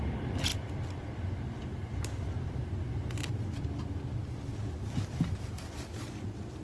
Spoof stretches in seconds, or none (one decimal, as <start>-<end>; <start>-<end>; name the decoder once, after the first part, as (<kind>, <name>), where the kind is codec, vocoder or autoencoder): 0.5-1.9 (vocoder, BigVGAN v2)